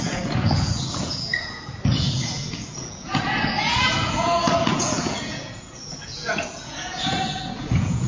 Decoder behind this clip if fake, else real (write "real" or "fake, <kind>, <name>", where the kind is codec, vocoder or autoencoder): fake, vocoder, Vocos